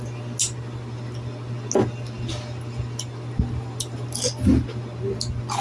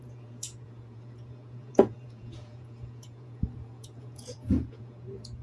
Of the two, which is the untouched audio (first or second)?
first